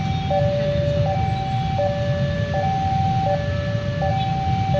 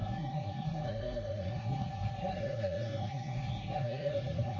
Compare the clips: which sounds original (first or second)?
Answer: first